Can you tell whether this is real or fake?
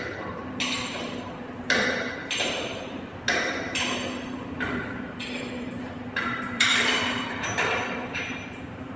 fake